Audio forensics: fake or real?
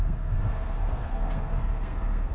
fake